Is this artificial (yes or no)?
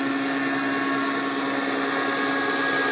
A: no